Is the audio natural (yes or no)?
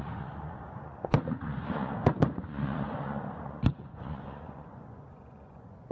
no